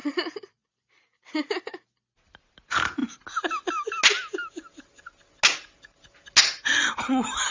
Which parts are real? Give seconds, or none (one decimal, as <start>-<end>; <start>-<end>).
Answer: 1.2-7.5